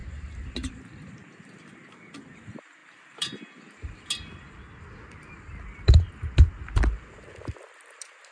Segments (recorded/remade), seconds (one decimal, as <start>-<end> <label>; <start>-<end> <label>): 0.0-8.3 recorded